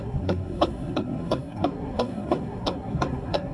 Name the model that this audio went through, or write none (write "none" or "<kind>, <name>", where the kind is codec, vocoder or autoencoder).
codec, SNAC